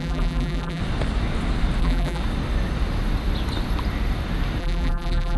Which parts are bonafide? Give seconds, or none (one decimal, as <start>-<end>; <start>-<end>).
0.8-1.8; 2.2-4.6